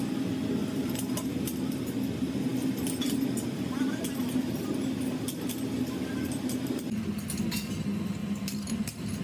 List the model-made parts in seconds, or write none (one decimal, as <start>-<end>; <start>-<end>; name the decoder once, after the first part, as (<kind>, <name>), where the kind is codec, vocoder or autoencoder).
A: 8.2-9.2 (vocoder, BigVGAN v2)